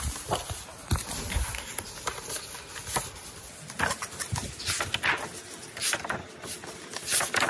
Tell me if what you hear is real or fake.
real